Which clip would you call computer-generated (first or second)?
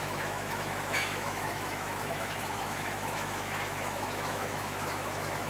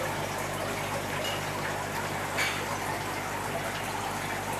first